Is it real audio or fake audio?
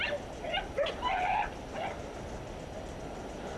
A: real